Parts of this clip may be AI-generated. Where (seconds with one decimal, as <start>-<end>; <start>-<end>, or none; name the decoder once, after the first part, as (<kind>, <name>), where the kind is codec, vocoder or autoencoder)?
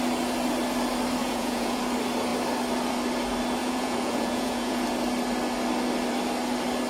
1.2-1.8 (vocoder, Vocos); 3.6-4.8